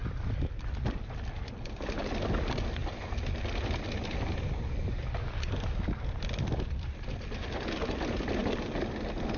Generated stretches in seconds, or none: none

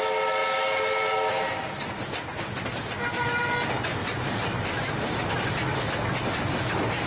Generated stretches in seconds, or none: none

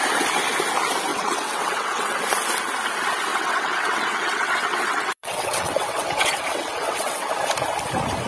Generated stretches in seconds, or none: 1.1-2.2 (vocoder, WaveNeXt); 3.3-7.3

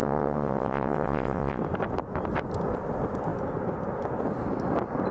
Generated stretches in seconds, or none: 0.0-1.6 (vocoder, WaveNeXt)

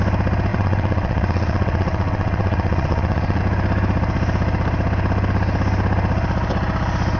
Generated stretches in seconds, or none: 0.5-3.4 (vocoder, WaveNeXt)

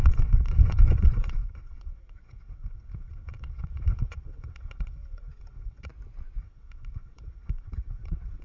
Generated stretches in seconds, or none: 0.0-5.9 (vocoder, WaveNeXt); 6.4-8.4

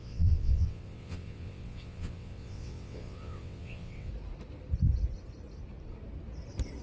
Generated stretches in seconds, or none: 0.0-4.1 (vocoder, WaveNeXt)